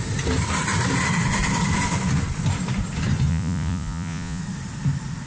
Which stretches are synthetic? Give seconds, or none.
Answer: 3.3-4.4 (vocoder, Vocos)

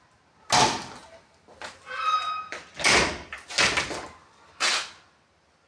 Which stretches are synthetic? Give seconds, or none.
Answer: none

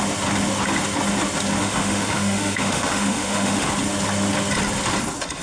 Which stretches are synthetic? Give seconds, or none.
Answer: 1.6-3.7 (autoencoder, DAC-VAE)

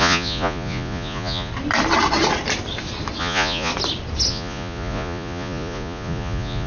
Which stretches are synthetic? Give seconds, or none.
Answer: 0.0-1.5 (vocoder, Vocos); 3.2-3.7; 4.3-6.7

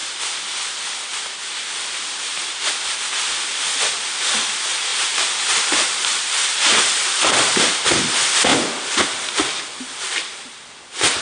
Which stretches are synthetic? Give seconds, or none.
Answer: 4.9-6.8 (vocoder, BigVGAN v2)